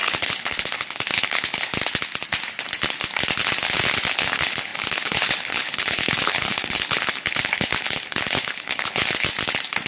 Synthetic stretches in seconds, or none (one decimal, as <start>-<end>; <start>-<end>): 0.0-1.7; 4.1-9.3